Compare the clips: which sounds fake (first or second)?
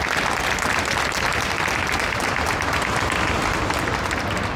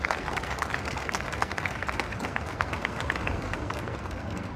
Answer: second